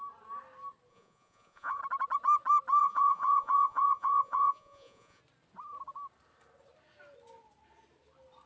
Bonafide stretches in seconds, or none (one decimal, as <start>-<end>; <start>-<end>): 0.0-0.9; 1.8-2.8; 5.2-8.5